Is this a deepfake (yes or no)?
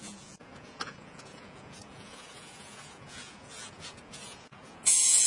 yes